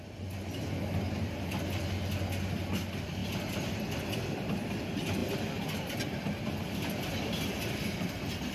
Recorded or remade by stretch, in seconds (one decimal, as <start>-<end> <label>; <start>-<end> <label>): 0.0-8.5 recorded